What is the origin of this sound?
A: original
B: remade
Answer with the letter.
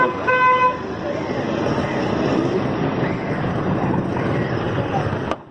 A